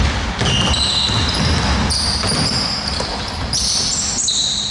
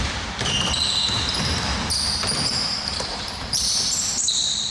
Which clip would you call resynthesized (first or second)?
second